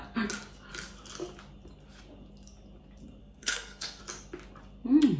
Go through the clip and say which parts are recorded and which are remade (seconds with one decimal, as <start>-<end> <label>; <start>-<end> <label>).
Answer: 0.0-3.2 recorded; 3.2-4.0 remade; 4.0-5.2 recorded